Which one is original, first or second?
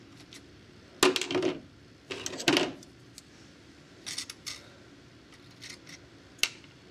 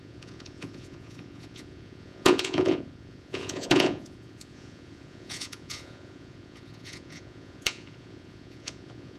first